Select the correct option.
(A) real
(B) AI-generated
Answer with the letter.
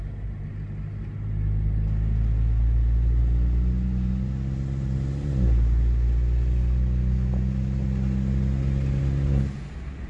A